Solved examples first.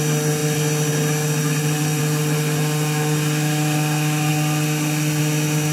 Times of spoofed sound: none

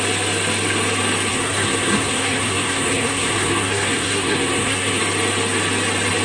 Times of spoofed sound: 1.3-5.0 (codec, SNAC)

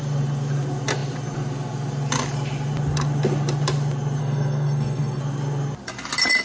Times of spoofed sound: 4.2-5.2 (codec, SNAC)

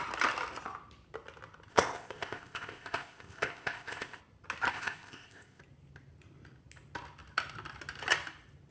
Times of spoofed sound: 1.7-4.2 (codec, ZipCodec); 4.7-5.6